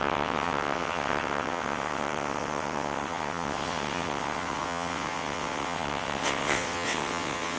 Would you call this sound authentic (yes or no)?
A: no